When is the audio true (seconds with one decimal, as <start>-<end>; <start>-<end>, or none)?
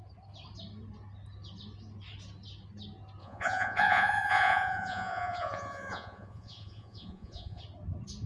0.0-3.2; 7.6-8.3